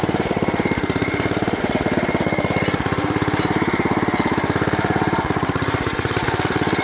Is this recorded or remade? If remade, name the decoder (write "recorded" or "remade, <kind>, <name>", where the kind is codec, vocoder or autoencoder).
remade, vocoder, BigVGAN v2